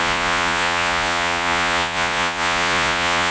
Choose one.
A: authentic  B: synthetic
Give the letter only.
B